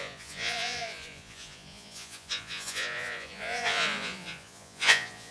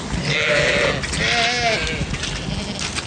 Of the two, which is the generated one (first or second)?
first